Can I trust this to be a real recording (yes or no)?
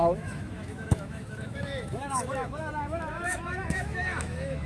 no